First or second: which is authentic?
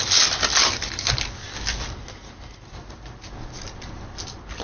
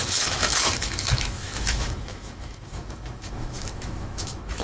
first